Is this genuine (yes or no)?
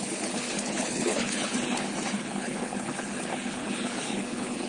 no